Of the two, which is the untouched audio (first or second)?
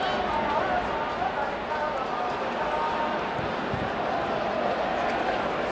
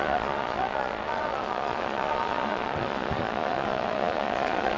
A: first